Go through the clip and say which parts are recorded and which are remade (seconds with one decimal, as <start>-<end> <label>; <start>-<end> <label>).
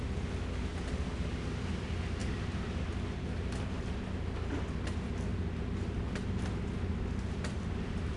0.0-8.2 recorded